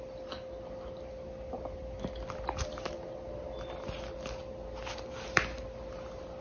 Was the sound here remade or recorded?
recorded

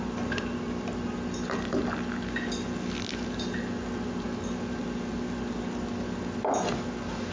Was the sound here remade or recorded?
recorded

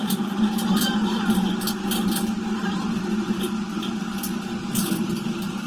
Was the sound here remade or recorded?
recorded